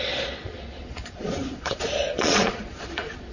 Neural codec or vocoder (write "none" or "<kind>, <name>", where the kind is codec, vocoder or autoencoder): vocoder, Vocos